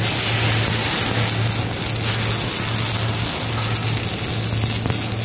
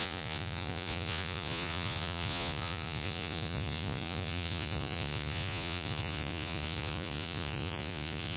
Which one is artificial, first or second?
second